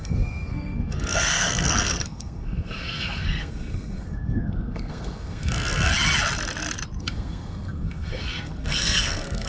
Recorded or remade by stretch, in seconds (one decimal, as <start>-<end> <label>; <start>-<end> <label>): 0.0-5.9 remade; 5.9-7.0 recorded; 7.0-9.5 remade